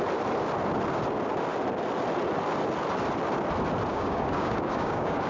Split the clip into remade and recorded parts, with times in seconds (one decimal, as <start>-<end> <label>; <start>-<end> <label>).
0.0-3.9 recorded; 3.9-5.3 remade